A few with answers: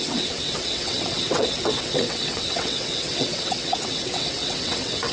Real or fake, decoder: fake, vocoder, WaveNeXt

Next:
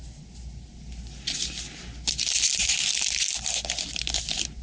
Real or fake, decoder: real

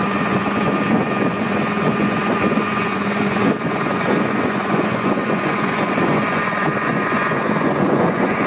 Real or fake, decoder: fake, vocoder, Vocos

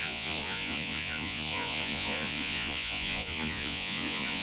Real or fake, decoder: fake, vocoder, Vocos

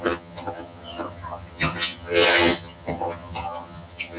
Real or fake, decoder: fake, vocoder, HiFi-GAN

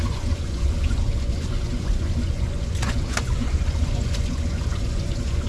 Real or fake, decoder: fake, vocoder, Vocos